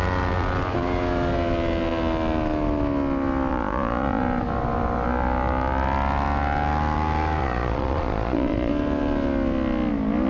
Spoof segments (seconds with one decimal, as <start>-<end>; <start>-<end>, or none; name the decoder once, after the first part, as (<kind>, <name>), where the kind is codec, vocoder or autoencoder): 3.5-4.2 (vocoder, Vocos); 7.4-8.7